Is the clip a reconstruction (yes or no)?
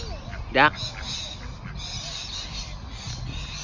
no